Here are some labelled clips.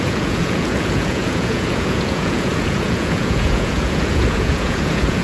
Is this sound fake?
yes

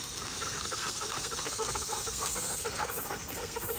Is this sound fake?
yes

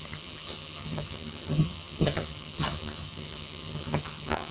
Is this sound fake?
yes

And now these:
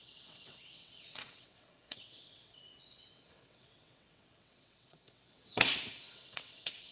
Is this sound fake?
yes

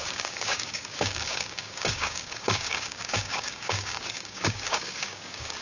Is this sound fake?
yes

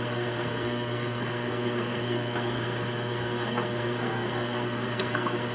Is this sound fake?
yes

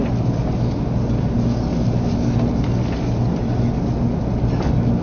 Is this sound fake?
no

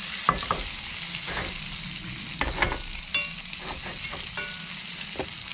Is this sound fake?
no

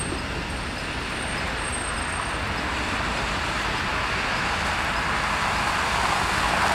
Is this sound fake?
no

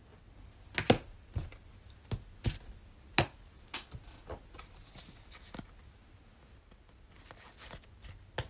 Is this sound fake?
no